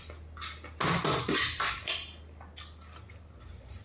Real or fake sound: real